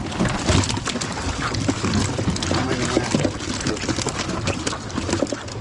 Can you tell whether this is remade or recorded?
recorded